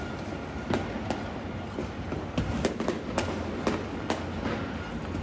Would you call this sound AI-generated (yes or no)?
no